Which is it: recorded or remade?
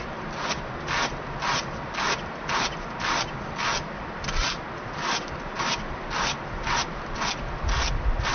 recorded